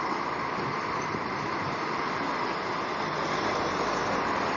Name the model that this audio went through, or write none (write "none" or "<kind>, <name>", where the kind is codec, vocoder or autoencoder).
none